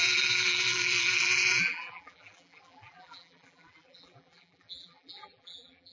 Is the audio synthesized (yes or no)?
yes